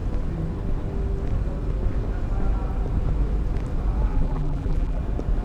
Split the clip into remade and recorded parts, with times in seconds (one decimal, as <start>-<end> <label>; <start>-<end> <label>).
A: 0.0-4.1 recorded; 4.1-5.0 remade; 5.0-5.4 recorded